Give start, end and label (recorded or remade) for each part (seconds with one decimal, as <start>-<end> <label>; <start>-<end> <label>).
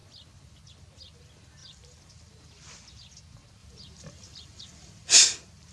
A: 0.0-1.6 recorded; 1.6-3.2 remade; 3.2-3.6 recorded; 3.6-5.2 remade; 5.2-5.7 recorded